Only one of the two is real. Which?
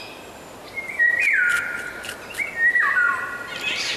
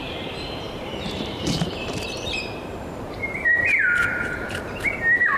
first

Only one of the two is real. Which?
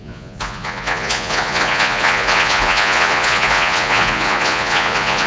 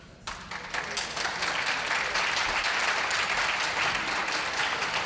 second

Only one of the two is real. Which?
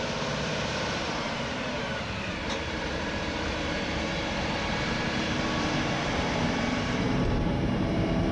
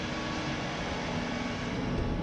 second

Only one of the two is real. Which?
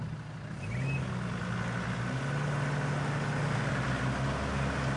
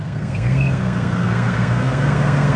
first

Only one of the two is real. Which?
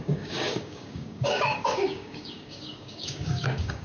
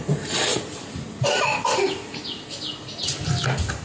second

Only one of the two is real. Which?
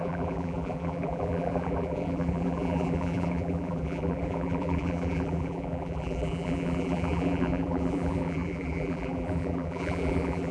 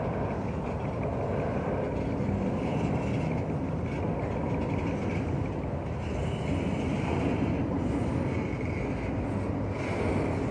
second